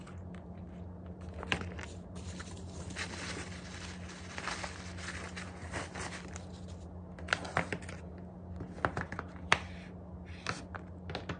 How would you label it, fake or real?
real